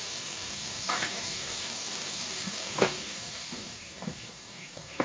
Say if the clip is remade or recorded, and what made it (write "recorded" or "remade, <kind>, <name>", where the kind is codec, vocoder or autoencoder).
remade, codec, DAC